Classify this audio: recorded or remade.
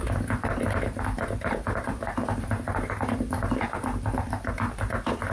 remade